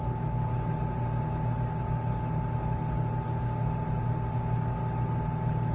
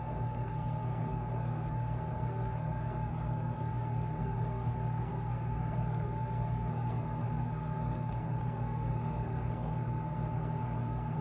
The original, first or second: first